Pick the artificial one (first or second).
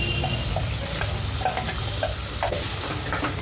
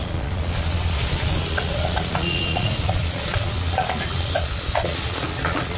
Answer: second